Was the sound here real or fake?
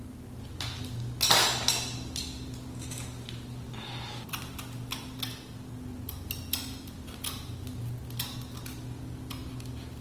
real